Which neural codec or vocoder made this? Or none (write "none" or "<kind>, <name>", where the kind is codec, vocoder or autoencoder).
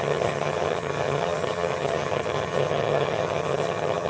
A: vocoder, HiFi-GAN